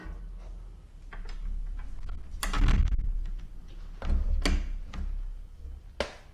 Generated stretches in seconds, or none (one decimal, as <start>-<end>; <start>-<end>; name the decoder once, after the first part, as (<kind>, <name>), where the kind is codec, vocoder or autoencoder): none